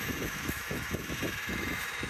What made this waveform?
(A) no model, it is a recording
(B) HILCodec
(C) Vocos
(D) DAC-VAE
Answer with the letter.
D